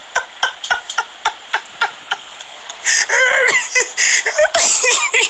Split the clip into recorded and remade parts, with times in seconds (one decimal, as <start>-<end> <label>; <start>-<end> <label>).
0.0-2.0 recorded; 2.0-2.6 remade; 2.6-5.3 recorded